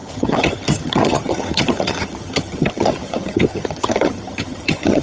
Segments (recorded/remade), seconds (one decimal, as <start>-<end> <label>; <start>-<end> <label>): 0.0-5.0 remade